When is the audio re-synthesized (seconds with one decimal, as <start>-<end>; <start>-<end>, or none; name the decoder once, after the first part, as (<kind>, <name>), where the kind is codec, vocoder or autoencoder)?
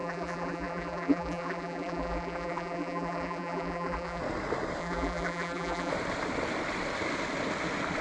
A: 0.0-4.2 (vocoder, BigVGAN v2); 4.8-5.9